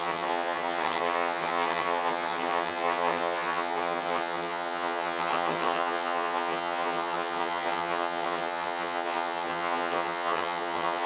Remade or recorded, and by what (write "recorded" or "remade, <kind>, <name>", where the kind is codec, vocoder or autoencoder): remade, vocoder, HiFi-GAN